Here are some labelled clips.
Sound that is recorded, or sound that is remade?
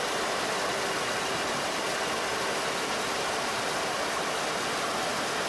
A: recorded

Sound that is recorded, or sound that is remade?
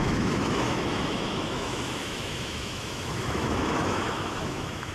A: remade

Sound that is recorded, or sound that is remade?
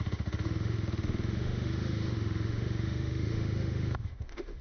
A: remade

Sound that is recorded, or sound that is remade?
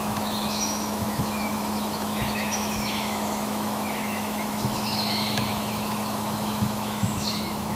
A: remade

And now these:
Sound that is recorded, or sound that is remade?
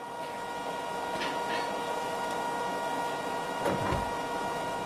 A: recorded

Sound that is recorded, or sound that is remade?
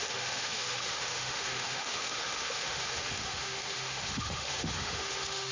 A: remade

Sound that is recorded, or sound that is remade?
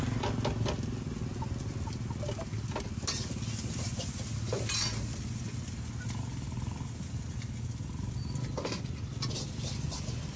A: recorded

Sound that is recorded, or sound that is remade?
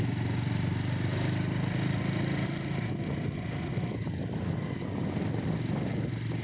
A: recorded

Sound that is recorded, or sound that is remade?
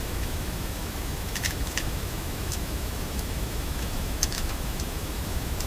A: remade